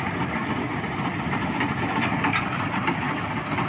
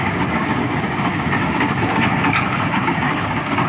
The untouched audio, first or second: first